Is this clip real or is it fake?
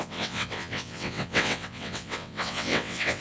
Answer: fake